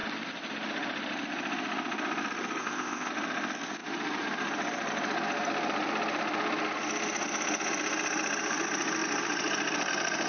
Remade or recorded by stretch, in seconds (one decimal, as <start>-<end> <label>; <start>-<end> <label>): 0.0-2.6 recorded; 2.6-3.1 remade; 3.1-10.3 recorded